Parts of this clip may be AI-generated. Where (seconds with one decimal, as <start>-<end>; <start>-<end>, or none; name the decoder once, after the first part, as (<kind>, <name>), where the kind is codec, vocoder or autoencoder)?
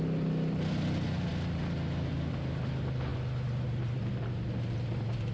none